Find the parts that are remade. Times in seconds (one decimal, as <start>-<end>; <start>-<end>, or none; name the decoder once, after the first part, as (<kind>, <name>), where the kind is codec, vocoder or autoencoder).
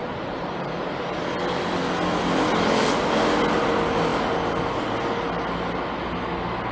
0.0-1.2 (vocoder, BigVGAN v2)